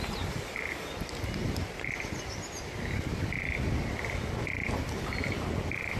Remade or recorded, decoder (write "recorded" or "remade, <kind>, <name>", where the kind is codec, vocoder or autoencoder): recorded